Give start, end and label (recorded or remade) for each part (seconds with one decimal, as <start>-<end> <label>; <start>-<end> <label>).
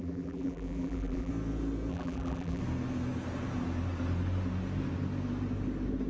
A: 0.0-1.3 remade; 1.3-1.9 recorded; 1.9-2.6 remade; 2.6-6.1 recorded